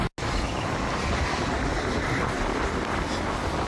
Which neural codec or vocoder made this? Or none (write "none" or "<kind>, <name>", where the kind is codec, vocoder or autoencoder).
none